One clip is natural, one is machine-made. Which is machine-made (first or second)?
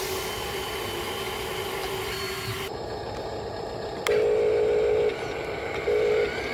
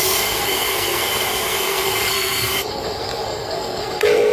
second